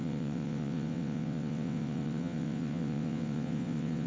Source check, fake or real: fake